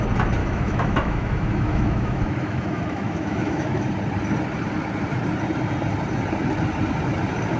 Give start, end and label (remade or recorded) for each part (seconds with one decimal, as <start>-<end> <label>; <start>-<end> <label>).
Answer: 0.0-0.4 recorded; 0.4-3.9 remade; 3.9-7.6 recorded